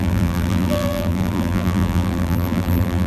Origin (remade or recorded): remade